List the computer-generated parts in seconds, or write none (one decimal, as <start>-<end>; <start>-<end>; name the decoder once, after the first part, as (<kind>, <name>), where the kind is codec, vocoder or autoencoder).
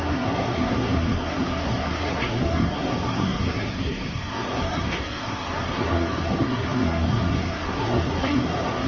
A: 0.0-8.9 (codec, SNAC)